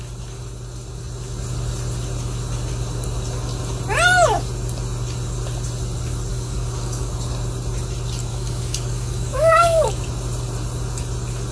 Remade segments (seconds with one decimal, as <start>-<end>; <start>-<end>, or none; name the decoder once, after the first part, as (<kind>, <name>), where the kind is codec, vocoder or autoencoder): 6.3-7.1 (codec, DAC); 8.3-9.9